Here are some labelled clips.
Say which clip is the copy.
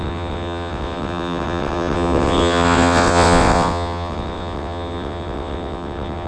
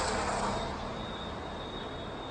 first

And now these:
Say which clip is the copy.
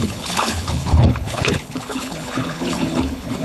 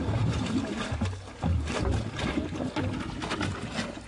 first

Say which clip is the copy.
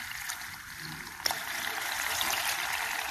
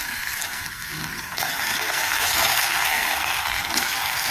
second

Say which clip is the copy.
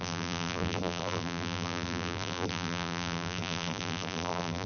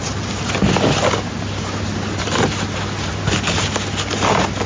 first